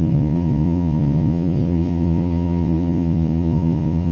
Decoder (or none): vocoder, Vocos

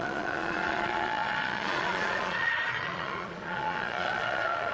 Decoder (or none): vocoder, Vocos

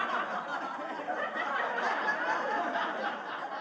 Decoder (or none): none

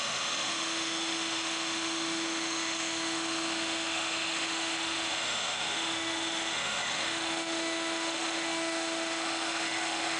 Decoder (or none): autoencoder, DAC-VAE